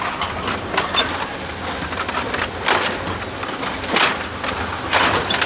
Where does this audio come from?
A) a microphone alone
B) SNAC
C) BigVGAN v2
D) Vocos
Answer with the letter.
A